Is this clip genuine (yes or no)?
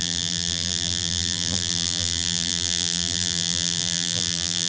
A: no